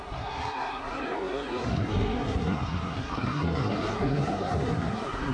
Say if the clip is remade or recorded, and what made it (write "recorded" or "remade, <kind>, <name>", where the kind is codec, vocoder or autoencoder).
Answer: remade, codec, SNAC